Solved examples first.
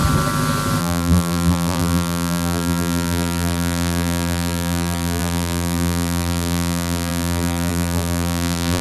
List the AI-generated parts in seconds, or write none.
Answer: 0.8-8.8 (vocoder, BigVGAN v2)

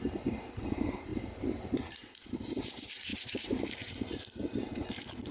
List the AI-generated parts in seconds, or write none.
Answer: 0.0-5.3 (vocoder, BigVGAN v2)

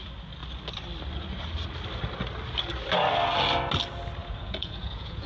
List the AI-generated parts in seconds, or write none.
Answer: 4.2-5.3 (vocoder, Vocos)